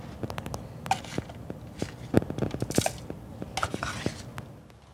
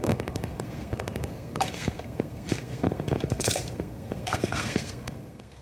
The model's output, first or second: second